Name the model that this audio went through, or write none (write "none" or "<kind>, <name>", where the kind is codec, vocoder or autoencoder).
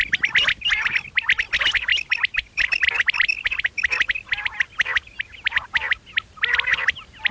none